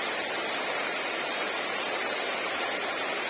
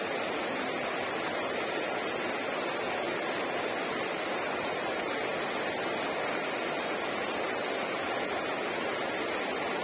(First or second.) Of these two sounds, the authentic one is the second